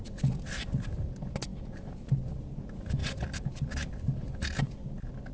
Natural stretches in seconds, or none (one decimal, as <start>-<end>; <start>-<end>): 0.0-5.3